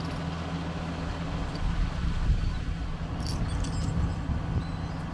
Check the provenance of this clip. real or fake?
real